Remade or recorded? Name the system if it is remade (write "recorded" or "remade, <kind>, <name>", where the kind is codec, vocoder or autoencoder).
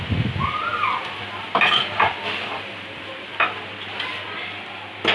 recorded